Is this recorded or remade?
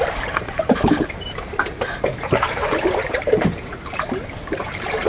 remade